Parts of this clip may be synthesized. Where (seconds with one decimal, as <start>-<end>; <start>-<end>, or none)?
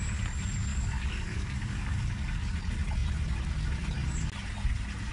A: 0.7-2.5